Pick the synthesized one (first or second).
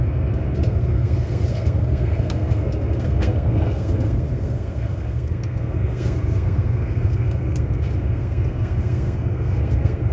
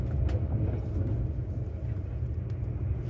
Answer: first